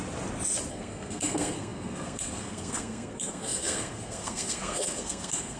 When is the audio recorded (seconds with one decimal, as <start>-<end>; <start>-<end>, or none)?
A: 0.0-0.7